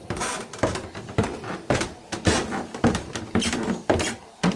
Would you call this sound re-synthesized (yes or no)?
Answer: yes